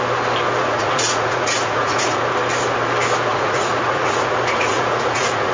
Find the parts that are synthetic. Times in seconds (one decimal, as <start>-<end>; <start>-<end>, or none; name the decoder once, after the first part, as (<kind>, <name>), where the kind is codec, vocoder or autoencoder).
0.6-2.2 (vocoder, Vocos); 3.3-5.5